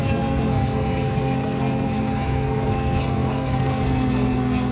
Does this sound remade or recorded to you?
remade